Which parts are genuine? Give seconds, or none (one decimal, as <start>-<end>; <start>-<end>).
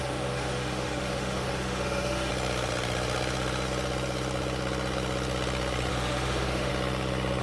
2.3-5.9; 6.7-7.4